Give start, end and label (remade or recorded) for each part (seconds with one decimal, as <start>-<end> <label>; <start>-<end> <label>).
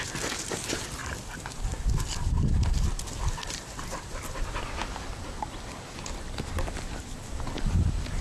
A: 0.0-8.2 recorded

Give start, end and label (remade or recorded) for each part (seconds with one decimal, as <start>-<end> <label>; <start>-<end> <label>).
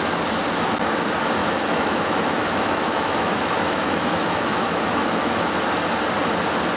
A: 0.0-1.4 recorded; 1.4-5.5 remade; 5.5-6.8 recorded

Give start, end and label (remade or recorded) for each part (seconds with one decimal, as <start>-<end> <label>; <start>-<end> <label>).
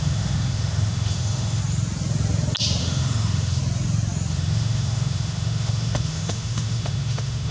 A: 0.0-1.6 remade; 1.6-2.8 recorded; 2.8-3.6 remade; 3.6-4.3 recorded; 4.3-7.5 remade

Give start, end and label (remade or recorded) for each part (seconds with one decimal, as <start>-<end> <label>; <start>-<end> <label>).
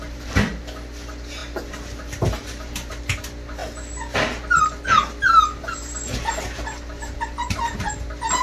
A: 0.0-8.4 recorded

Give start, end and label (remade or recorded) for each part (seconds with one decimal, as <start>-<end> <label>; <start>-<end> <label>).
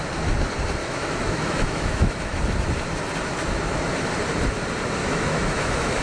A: 0.0-0.8 recorded; 0.8-2.4 remade; 2.4-5.0 recorded; 5.0-6.0 remade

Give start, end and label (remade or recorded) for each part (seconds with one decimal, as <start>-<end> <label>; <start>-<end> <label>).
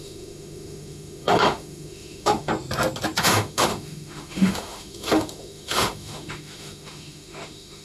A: 0.0-2.5 remade; 2.5-3.2 recorded; 3.2-7.8 remade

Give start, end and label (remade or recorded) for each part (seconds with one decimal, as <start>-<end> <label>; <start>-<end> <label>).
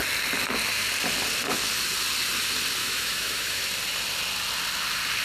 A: 0.0-2.8 recorded; 2.8-3.6 remade; 3.6-5.2 recorded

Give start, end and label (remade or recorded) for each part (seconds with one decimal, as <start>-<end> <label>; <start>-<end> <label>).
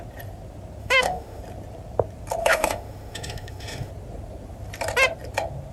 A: 0.0-0.8 recorded; 0.8-1.4 remade; 1.4-2.4 recorded; 2.4-3.9 remade; 3.9-5.7 recorded